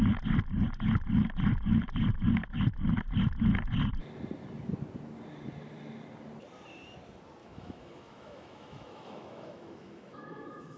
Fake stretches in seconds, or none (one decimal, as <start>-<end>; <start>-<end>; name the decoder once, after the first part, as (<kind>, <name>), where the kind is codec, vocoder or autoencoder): 7.4-10.8 (autoencoder, DAC-VAE)

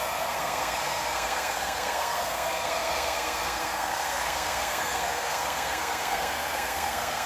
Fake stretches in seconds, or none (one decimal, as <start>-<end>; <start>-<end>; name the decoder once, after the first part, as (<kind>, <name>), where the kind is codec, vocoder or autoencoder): 0.0-7.3 (codec, SNAC)